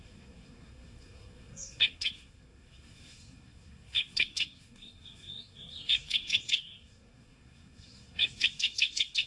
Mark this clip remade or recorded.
remade